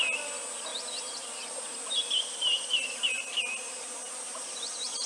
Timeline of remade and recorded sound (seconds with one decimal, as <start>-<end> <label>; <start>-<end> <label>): 0.0-5.1 recorded